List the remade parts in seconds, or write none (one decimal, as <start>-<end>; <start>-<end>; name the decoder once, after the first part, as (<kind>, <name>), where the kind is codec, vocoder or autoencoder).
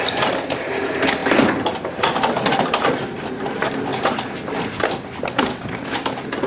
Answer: none